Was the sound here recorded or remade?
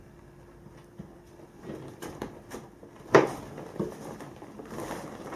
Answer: recorded